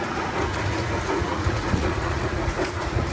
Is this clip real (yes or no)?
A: no